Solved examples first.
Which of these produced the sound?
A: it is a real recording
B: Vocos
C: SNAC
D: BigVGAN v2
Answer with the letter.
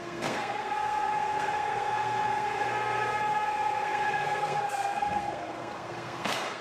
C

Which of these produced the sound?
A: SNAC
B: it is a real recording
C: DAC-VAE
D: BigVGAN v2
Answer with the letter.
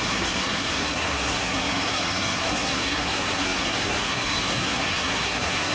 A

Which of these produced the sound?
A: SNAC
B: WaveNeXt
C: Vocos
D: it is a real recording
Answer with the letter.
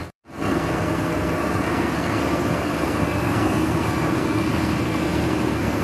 A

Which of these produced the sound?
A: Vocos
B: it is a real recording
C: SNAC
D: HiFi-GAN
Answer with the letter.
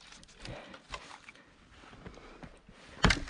B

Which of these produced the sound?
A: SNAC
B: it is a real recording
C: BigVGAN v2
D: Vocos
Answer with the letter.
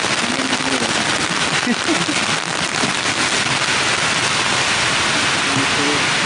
B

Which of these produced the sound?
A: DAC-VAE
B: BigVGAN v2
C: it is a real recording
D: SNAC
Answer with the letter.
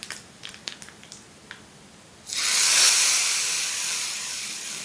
C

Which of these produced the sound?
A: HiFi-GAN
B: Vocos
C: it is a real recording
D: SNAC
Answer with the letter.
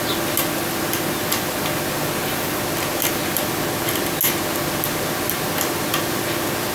C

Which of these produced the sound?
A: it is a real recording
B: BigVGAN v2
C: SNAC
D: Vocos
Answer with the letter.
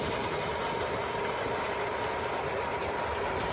A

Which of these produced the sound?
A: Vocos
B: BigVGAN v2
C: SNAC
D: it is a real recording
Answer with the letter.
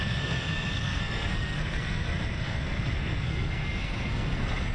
C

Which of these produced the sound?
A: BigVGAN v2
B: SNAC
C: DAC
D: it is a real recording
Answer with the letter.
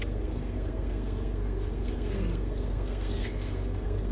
B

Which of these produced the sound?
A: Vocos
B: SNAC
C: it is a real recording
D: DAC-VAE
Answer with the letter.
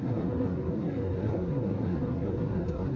B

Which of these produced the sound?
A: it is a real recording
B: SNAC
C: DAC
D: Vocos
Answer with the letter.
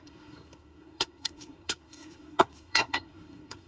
B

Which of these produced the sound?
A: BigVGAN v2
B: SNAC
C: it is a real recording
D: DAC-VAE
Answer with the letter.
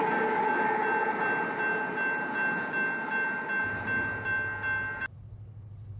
C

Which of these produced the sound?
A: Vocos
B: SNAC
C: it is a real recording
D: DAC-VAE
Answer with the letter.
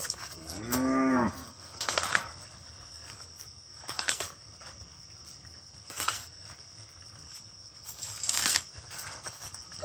B